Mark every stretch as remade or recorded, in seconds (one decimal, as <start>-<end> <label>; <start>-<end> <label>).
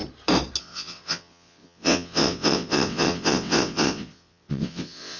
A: 0.0-0.6 recorded; 0.6-5.2 remade